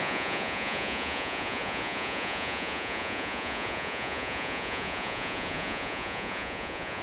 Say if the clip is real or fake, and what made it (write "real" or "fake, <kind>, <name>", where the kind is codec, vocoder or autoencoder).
fake, vocoder, Vocos